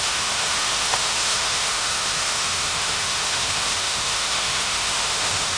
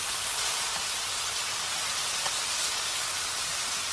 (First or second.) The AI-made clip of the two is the first